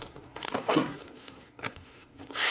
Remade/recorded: remade